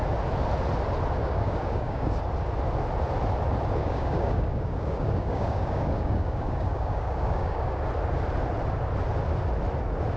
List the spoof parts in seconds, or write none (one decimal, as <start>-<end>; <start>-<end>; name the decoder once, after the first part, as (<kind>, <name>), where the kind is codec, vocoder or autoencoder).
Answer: 1.2-2.2 (codec, DAC); 3.8-7.8